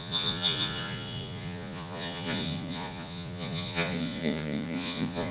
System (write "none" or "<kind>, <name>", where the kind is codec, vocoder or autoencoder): vocoder, Vocos